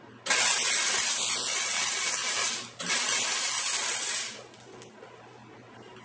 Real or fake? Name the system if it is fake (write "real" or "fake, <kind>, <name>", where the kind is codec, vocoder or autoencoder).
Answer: real